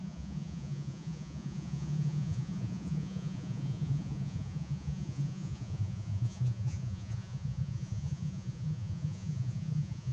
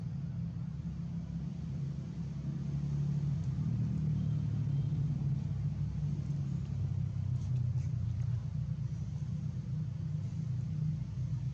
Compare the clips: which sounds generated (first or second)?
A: first